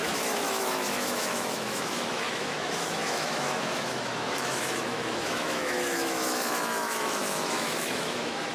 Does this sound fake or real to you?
fake